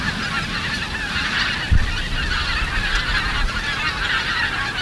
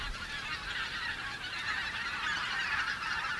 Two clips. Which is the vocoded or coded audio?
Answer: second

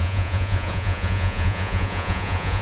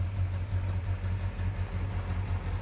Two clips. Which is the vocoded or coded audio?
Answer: first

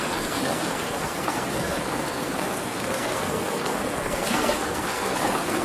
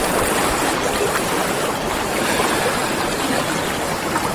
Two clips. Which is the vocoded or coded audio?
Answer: first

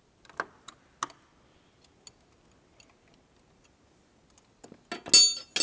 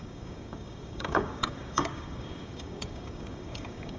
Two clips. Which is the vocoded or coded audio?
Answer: second